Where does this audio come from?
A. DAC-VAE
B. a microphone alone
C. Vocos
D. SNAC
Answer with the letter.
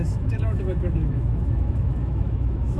A